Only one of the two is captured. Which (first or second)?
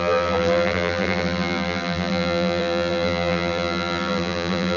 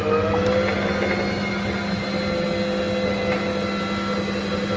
second